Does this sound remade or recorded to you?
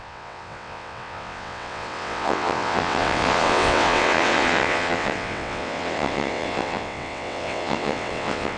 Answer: remade